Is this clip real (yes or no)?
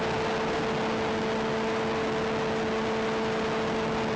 yes